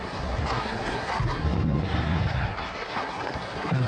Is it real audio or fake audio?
fake